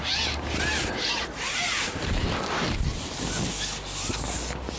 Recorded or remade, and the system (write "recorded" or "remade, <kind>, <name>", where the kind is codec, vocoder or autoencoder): recorded